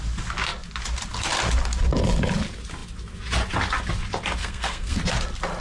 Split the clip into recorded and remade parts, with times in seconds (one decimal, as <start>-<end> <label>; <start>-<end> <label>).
0.0-4.4 recorded; 4.4-5.0 remade; 5.0-5.6 recorded

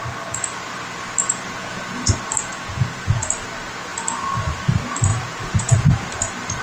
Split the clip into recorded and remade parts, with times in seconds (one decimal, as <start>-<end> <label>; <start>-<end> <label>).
0.0-1.2 recorded; 1.2-2.1 remade; 2.1-2.5 recorded; 2.5-3.3 remade; 3.3-5.1 recorded; 5.1-5.9 remade; 5.9-6.6 recorded

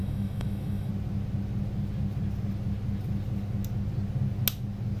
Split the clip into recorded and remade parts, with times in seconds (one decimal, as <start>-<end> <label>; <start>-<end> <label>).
0.0-0.9 remade; 0.9-5.0 recorded

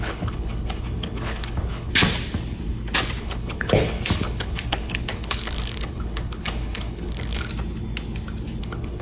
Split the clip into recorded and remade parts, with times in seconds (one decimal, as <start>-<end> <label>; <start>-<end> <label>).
0.0-1.9 remade; 1.9-3.2 recorded; 3.2-7.5 remade; 7.5-8.6 recorded; 8.6-9.0 remade

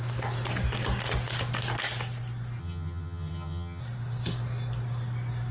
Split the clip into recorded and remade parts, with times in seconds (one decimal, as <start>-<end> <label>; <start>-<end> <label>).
0.0-2.6 recorded; 2.6-3.8 remade; 3.8-5.5 recorded

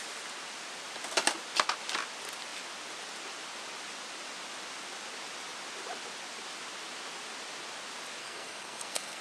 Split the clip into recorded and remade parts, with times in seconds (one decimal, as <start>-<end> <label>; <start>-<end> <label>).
0.0-8.2 recorded; 8.2-9.2 remade

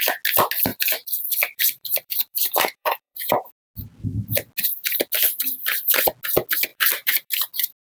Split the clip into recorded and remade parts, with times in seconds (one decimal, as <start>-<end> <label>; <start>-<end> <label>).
0.0-0.7 recorded; 0.7-3.5 remade; 3.5-6.7 recorded; 6.7-7.3 remade; 7.3-7.9 recorded

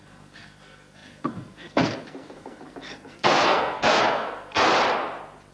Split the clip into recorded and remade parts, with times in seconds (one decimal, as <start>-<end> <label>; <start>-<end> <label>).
0.0-4.7 remade; 4.7-5.5 recorded